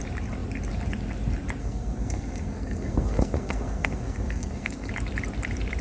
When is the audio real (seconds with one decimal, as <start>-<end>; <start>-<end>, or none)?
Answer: 0.0-1.6; 4.9-5.8